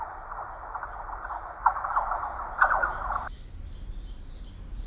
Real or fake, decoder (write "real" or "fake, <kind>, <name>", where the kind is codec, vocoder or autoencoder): real